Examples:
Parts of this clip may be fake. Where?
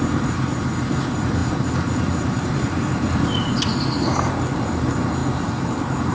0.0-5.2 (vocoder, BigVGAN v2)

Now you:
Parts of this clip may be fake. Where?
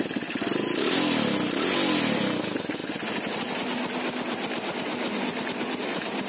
2.8-3.4 (vocoder, BigVGAN v2)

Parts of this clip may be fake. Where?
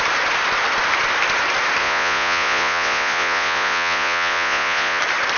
1.8-5.0 (vocoder, Vocos)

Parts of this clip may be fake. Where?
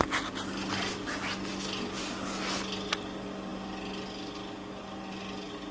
none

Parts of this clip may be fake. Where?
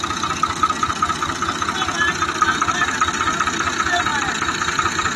none